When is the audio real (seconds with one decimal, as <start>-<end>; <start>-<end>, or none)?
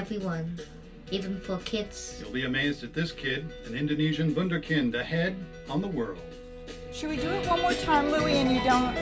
0.0-9.0